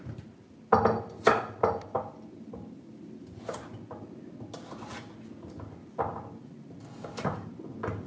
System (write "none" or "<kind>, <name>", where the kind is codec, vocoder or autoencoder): none